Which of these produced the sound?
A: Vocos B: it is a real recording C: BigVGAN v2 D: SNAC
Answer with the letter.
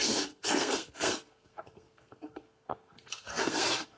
D